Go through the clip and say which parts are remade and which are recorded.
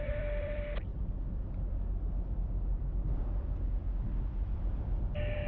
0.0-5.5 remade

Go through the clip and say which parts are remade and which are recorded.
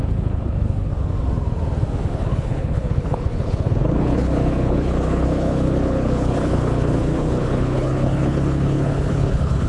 0.0-0.9 remade; 0.9-2.1 recorded; 2.1-9.7 remade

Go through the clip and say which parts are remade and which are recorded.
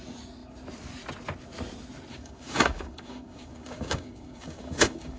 0.0-2.1 recorded; 2.1-5.2 remade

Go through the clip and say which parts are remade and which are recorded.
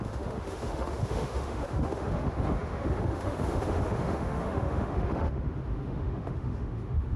0.0-7.2 remade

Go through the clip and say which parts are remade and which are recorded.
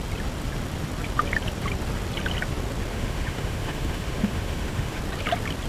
0.0-2.9 recorded; 2.9-5.0 remade; 5.0-5.7 recorded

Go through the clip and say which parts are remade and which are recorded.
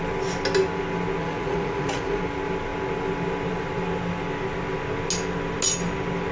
0.0-1.2 recorded; 1.2-2.2 remade; 2.2-6.3 recorded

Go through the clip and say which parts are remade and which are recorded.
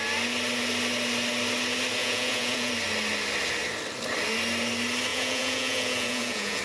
0.0-2.0 recorded; 2.0-2.7 remade; 2.7-5.1 recorded; 5.1-6.6 remade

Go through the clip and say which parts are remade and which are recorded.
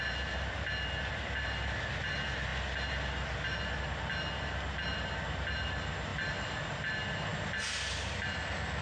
0.0-6.1 recorded; 6.1-6.6 remade; 6.6-8.8 recorded